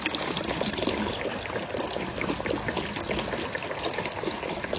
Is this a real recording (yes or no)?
yes